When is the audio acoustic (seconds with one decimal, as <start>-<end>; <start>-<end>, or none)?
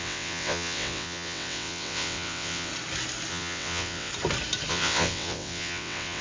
2.7-3.3; 4.1-4.7